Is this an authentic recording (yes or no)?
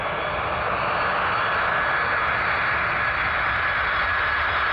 yes